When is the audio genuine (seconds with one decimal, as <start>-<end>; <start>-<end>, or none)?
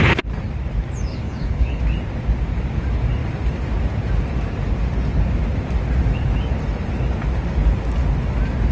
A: 0.0-1.1; 1.8-8.7